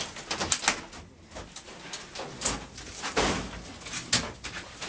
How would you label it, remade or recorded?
recorded